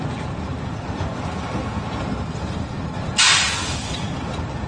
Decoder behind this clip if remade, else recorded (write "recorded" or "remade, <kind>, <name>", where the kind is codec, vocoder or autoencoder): recorded